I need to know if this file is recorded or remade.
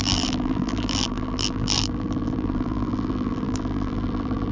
remade